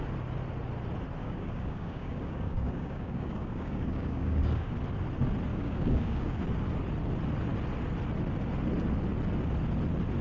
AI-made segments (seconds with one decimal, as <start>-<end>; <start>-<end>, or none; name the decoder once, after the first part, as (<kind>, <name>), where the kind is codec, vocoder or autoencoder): 1.2-4.7 (codec, DAC); 5.5-6.4